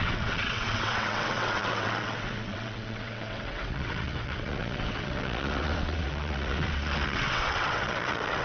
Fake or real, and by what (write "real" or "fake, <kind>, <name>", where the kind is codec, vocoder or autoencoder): fake, vocoder, WaveNeXt